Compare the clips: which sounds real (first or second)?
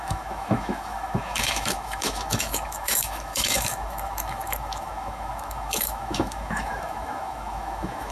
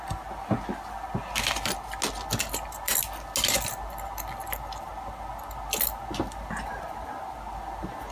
second